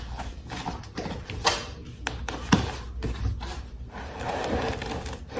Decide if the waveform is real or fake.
real